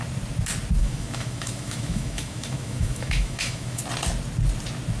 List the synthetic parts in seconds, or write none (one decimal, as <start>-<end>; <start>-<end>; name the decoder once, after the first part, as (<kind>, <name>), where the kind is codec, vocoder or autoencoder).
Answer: 0.8-3.8 (autoencoder, DAC-VAE)